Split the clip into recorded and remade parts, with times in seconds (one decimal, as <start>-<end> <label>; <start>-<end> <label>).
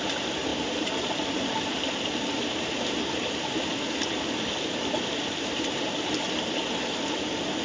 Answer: 0.0-7.6 recorded